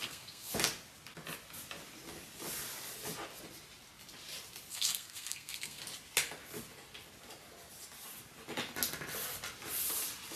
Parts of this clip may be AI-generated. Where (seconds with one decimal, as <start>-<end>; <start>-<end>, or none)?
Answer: 0.0-0.5; 4.7-5.8